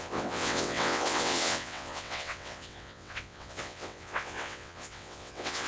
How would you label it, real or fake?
fake